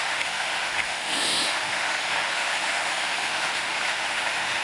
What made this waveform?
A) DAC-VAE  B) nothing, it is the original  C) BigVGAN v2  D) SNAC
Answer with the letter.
A